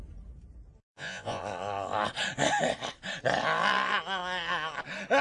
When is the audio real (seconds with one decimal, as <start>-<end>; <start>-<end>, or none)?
0.0-0.8; 1.4-5.2